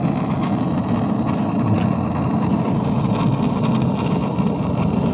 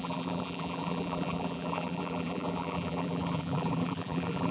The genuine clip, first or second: first